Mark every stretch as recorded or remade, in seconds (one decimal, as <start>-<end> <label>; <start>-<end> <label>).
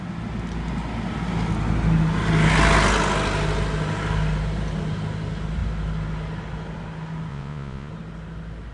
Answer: 0.0-7.3 recorded; 7.3-7.9 remade; 7.9-8.7 recorded